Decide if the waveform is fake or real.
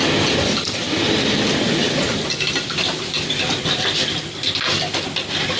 real